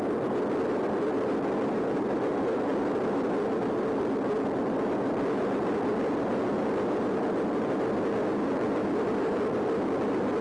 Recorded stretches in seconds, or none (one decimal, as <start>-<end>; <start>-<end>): 0.0-10.4